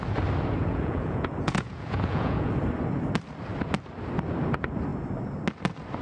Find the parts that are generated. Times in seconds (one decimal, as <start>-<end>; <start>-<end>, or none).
0.6-2.6